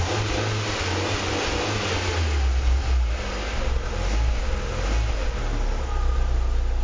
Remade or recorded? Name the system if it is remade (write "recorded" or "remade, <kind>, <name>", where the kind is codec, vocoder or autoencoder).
recorded